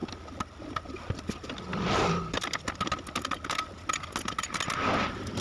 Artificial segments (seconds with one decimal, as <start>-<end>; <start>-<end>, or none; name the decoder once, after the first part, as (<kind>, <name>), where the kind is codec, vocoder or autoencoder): none